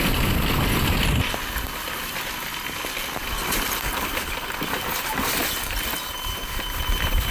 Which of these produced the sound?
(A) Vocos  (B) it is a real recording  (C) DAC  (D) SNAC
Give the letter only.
B